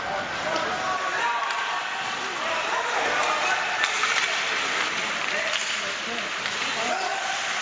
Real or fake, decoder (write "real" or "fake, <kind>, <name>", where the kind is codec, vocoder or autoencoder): real